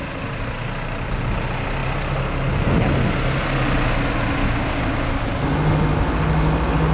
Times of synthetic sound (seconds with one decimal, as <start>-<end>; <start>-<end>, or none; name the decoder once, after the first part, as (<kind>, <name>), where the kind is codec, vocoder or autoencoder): 4.4-5.1 (codec, DAC)